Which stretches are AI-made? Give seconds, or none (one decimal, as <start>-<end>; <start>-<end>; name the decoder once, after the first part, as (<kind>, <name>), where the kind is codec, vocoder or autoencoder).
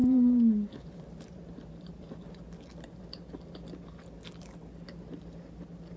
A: 0.0-2.4 (vocoder, BigVGAN v2)